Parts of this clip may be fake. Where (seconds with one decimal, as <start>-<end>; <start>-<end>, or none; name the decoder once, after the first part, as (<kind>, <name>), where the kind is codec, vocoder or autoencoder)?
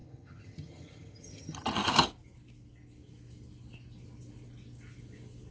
0.0-2.1 (vocoder, HiFi-GAN)